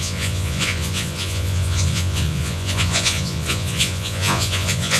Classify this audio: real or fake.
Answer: fake